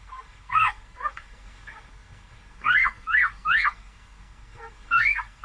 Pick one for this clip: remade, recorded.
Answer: remade